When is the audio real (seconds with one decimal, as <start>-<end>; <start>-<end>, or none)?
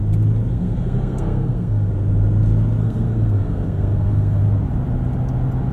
0.0-0.5; 1.9-2.8; 4.4-5.7